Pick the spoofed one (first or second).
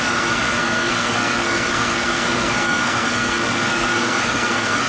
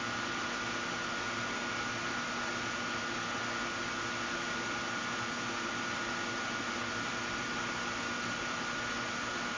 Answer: first